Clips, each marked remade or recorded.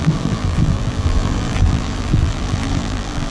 remade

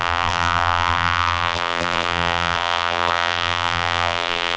remade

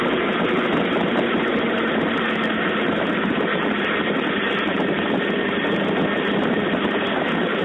recorded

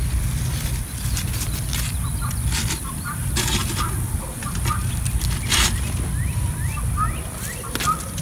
recorded